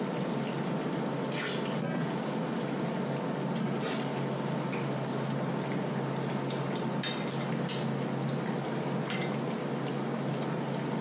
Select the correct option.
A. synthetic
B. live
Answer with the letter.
B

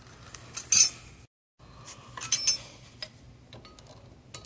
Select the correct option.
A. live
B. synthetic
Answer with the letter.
A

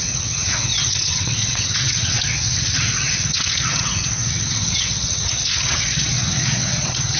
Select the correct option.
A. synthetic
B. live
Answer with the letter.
A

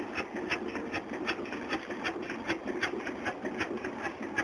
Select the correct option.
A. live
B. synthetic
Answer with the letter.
A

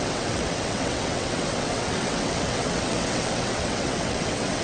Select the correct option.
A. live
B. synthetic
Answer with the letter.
B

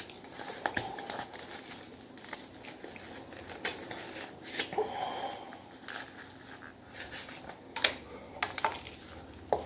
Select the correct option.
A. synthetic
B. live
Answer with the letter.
B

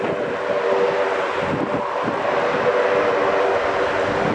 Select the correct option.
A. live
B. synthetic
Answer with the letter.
A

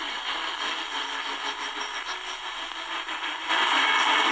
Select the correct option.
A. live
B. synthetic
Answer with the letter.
A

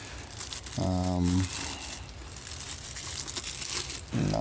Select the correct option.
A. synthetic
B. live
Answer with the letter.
B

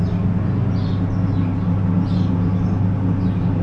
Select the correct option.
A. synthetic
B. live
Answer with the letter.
B